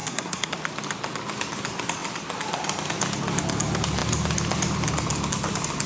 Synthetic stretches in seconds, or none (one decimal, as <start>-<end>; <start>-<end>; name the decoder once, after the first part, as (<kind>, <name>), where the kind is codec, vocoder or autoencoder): 0.0-0.5 (codec, SNAC)